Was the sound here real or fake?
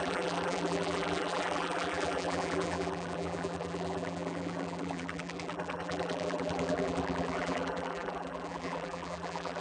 fake